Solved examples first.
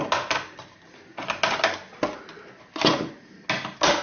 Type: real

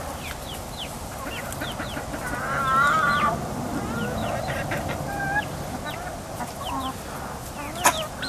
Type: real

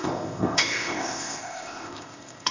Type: fake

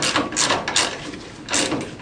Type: real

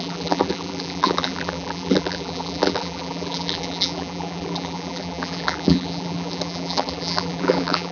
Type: fake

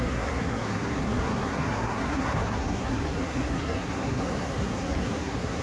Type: fake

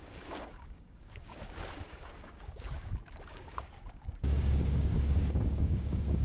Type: fake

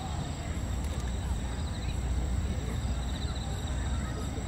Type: fake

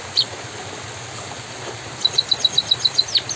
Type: real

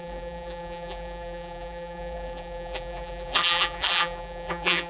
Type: fake